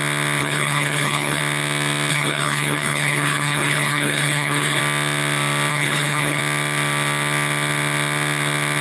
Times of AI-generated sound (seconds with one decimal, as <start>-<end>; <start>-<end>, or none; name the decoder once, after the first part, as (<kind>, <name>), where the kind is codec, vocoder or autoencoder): 0.4-1.4 (codec, HILCodec); 2.1-4.8; 5.7-6.4